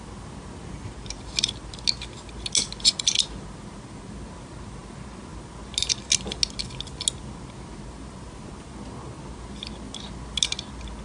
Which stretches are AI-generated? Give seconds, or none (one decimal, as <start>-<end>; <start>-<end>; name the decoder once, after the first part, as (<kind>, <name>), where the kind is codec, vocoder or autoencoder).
none